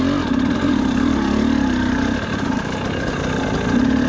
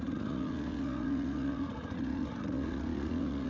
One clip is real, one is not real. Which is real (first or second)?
first